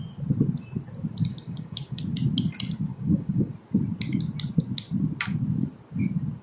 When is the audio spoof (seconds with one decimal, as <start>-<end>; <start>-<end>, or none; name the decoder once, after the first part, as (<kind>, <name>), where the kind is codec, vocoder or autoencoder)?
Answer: 1.3-2.0 (codec, DAC); 2.9-3.5